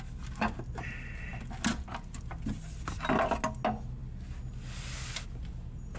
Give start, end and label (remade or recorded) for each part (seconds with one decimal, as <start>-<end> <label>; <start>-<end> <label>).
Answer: 0.0-6.0 recorded